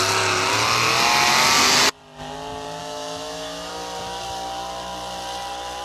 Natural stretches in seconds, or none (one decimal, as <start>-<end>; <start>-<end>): 0.0-2.8; 3.7-5.8